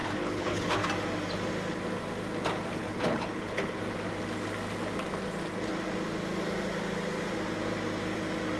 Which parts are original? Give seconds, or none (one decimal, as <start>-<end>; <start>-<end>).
0.8-2.8; 3.8-8.6